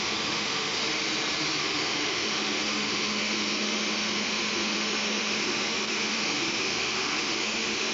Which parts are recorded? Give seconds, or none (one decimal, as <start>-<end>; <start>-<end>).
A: 0.8-1.6